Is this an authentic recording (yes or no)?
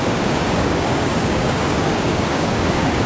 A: no